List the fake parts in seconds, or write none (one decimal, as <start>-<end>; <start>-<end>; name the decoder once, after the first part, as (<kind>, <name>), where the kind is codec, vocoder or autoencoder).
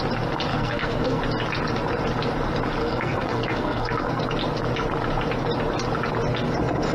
0.5-1.2 (codec, SNAC); 2.8-4.2